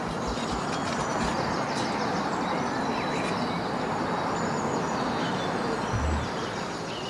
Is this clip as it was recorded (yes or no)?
yes